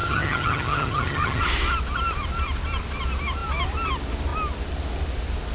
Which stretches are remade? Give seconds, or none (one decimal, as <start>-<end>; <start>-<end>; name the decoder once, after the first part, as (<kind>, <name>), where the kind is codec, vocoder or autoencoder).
0.0-1.4 (vocoder, HiFi-GAN)